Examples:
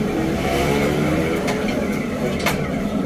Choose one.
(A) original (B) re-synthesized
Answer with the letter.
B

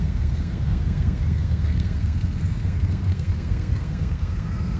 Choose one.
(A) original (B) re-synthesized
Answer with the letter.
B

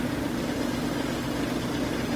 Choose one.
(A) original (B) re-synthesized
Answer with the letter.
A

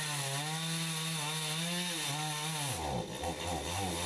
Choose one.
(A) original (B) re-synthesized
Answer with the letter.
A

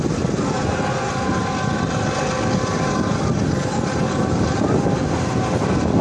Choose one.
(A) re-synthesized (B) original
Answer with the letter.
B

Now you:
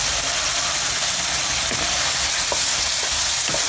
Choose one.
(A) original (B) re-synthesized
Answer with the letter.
A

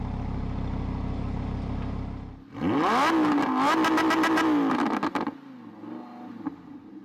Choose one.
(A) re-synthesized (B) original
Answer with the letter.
B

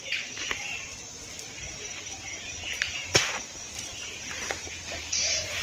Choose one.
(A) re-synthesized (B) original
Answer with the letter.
B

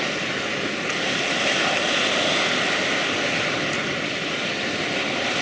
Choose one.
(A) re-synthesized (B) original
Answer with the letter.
B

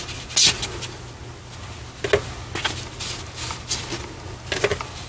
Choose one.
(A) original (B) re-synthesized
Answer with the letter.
A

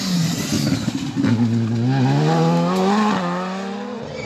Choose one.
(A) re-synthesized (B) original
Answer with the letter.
B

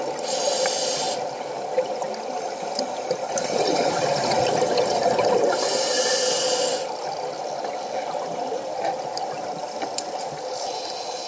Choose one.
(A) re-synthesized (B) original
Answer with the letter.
B